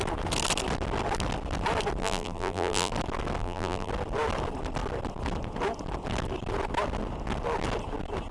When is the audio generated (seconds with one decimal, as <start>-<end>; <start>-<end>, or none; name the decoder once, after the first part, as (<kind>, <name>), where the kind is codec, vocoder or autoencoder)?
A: 2.0-2.9 (vocoder, BigVGAN v2); 3.4-3.9